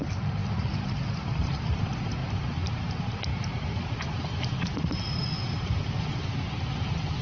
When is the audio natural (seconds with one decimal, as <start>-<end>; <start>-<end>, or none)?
0.0-3.3; 3.9-7.2